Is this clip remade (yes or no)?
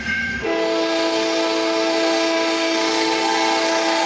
yes